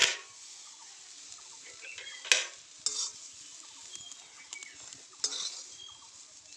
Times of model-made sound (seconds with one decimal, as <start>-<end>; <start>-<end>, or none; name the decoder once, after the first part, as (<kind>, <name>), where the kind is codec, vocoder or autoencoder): 0.0-0.9 (vocoder, Vocos)